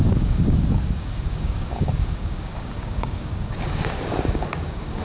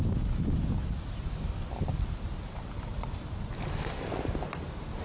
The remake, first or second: first